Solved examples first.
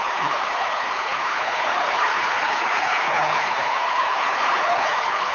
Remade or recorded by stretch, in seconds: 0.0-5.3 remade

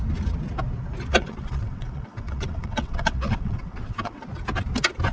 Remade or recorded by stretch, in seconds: 0.0-1.1 recorded; 1.1-4.2 remade; 4.2-5.1 recorded

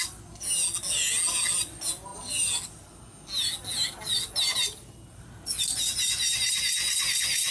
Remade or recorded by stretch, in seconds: 0.0-7.5 recorded